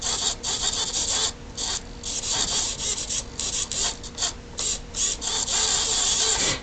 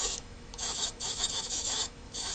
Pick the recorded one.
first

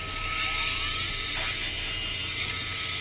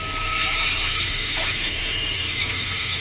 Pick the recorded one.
first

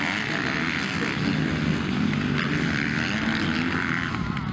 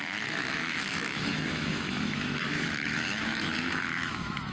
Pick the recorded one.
first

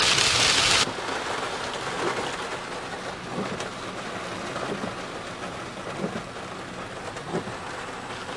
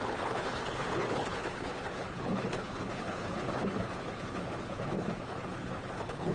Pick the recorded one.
first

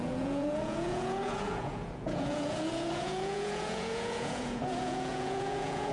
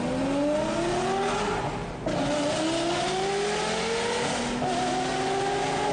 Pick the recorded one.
second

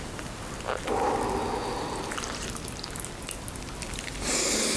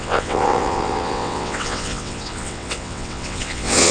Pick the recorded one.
first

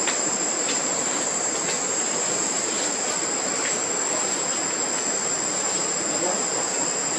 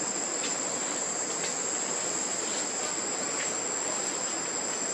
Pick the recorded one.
second